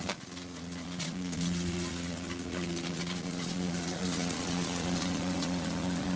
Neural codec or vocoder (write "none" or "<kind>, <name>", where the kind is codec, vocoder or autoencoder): vocoder, Vocos